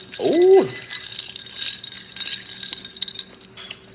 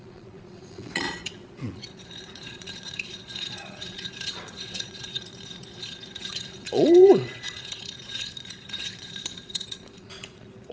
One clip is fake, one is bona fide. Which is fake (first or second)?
second